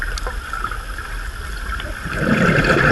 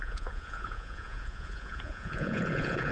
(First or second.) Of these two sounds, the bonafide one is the first